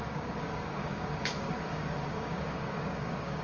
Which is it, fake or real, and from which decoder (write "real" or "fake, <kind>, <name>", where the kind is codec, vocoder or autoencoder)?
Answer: fake, codec, DAC